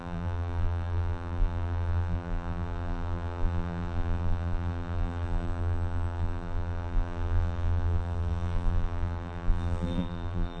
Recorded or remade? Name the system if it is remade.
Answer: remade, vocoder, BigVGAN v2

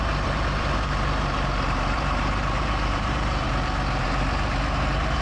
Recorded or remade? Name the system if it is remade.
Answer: remade, vocoder, BigVGAN v2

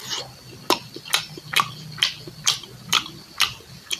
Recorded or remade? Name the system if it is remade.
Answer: recorded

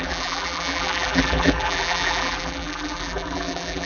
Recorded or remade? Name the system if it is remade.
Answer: remade, vocoder, BigVGAN v2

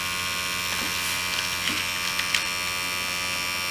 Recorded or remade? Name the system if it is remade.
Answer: recorded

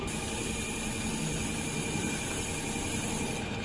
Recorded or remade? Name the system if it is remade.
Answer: recorded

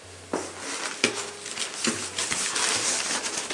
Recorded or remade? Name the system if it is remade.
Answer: recorded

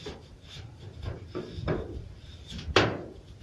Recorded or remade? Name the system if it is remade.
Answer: remade, vocoder, BigVGAN v2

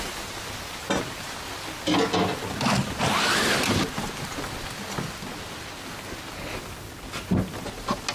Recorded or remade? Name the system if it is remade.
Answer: recorded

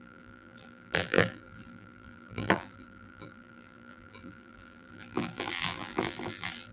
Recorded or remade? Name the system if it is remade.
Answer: remade, vocoder, BigVGAN v2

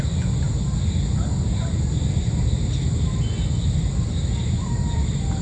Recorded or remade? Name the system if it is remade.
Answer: recorded